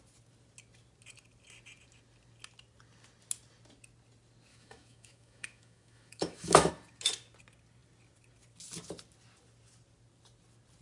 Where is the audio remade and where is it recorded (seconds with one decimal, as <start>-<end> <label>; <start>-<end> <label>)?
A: 0.0-4.5 recorded; 4.5-6.7 remade; 6.7-10.8 recorded